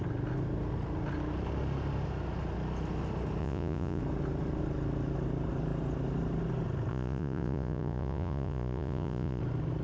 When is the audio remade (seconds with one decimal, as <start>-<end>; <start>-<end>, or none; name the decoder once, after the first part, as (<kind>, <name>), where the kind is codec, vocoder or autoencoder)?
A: 3.4-4.0 (vocoder, Vocos); 6.9-9.4